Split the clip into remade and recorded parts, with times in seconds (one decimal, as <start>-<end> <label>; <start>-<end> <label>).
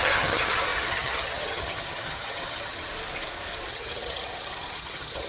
0.0-2.9 remade; 2.9-3.7 recorded; 3.7-5.3 remade